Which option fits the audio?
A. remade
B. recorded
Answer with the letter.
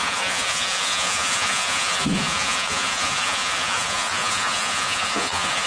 A